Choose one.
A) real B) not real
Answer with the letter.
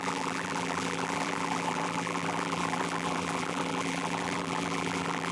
B